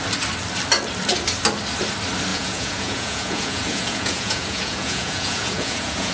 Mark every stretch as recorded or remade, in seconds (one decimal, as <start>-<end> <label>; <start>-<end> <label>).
0.0-2.3 recorded; 2.3-6.1 remade